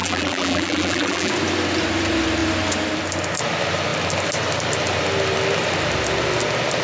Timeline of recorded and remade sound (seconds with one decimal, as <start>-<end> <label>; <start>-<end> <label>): 0.0-1.3 remade; 1.3-6.8 recorded